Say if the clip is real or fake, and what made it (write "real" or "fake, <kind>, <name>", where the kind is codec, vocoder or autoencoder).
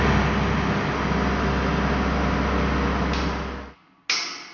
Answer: real